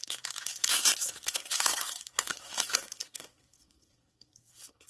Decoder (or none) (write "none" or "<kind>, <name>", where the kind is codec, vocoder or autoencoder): codec, SNAC